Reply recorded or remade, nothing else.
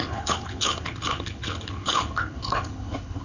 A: remade